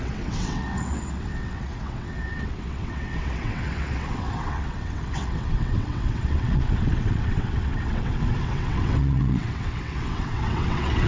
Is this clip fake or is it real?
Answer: fake